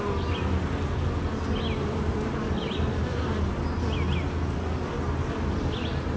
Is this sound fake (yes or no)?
no